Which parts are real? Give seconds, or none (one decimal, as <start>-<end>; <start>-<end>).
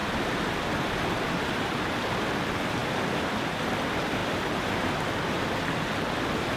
0.0-6.6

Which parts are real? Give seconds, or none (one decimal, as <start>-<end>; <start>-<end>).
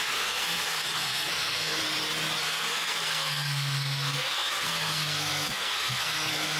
1.8-2.4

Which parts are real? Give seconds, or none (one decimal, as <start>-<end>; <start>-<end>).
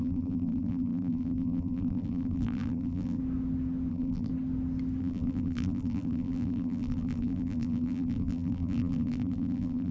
3.2-3.9; 4.3-5.0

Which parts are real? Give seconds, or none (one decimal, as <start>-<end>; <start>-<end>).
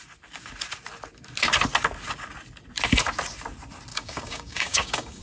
0.0-3.9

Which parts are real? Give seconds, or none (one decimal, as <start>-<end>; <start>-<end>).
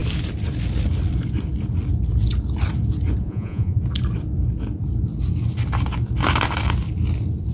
0.0-3.2; 3.8-7.5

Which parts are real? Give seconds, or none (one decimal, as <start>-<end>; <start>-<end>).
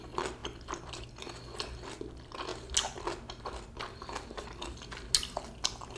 0.0-0.4; 1.0-6.0